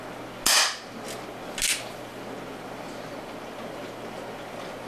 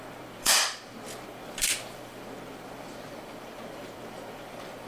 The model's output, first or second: second